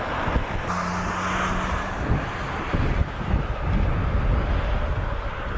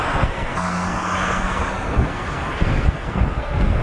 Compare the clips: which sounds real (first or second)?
first